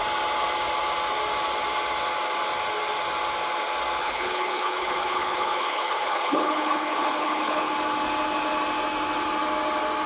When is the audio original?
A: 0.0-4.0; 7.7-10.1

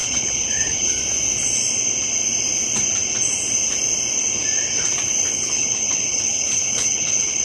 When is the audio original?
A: 1.0-5.3

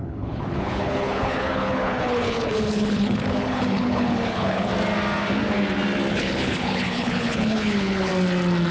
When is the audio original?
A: 4.7-6.1; 8.1-8.7

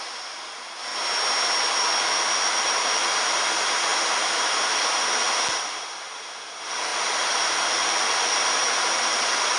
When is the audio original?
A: 0.0-9.6

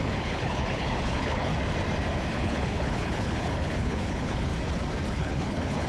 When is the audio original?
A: 1.5-2.3; 4.5-5.1

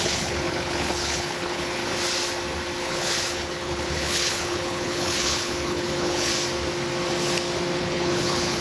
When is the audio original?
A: 1.8-2.8; 6.3-7.8